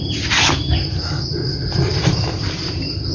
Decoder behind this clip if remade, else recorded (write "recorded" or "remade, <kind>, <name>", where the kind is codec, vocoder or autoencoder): recorded